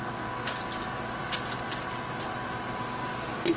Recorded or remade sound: recorded